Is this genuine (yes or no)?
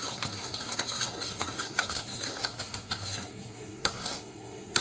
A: no